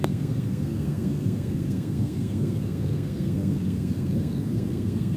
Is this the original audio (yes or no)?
no